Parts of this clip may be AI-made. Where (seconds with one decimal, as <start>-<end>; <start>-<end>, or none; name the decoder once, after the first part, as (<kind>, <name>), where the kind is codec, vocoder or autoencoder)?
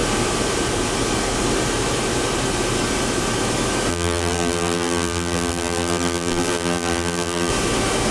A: 3.9-7.5 (vocoder, BigVGAN v2)